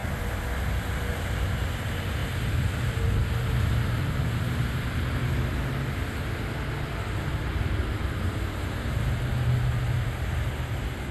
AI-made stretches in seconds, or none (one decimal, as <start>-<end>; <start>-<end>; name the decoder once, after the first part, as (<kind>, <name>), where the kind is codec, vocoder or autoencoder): 2.2-3.1 (vocoder, BigVGAN v2)